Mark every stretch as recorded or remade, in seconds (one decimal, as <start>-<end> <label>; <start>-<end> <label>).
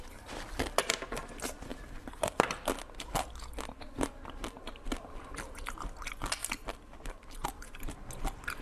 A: 0.0-1.7 recorded; 1.7-2.5 remade; 2.5-8.6 recorded